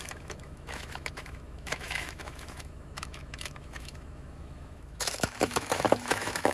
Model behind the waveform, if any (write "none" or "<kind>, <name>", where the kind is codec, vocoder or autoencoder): autoencoder, DAC-VAE